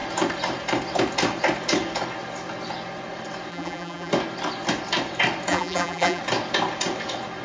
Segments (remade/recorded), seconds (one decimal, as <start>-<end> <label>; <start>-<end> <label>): 0.0-3.5 recorded; 3.5-4.1 remade; 4.1-5.5 recorded; 5.5-6.2 remade; 6.2-7.4 recorded